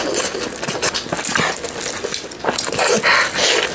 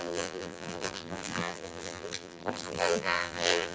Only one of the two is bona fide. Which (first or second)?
first